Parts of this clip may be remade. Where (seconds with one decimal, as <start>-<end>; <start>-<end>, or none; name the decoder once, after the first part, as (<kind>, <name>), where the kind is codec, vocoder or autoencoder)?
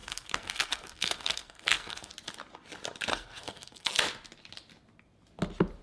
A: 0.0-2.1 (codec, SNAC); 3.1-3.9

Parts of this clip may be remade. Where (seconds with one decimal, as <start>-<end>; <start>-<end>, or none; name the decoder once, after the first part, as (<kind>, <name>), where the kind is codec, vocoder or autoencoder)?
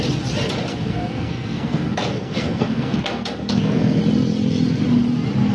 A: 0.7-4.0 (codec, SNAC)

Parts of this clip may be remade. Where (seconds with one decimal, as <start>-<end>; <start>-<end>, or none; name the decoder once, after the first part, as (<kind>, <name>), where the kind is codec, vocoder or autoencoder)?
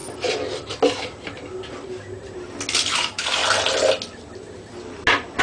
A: 2.9-3.4 (autoencoder, DAC-VAE)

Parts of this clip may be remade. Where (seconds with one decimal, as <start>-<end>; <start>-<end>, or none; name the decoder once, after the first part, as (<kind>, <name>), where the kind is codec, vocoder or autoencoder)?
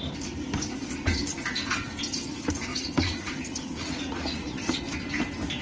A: 2.7-4.8 (vocoder, Vocos)